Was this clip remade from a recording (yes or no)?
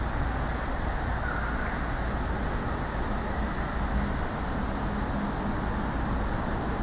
no